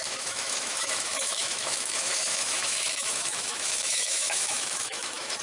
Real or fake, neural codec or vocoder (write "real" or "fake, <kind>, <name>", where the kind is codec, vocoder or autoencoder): fake, autoencoder, DAC-VAE